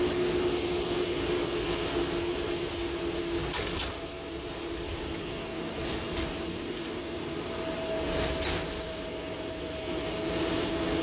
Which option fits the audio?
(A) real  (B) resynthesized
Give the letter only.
A